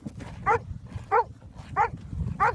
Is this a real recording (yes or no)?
yes